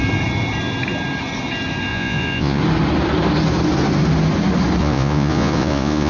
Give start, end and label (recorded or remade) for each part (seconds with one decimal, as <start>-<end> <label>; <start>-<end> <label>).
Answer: 0.0-1.9 recorded; 1.9-2.6 remade; 2.6-4.8 recorded; 4.8-6.1 remade